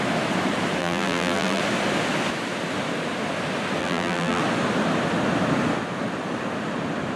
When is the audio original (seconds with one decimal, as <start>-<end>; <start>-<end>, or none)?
0.0-0.8; 1.6-3.8; 4.4-7.2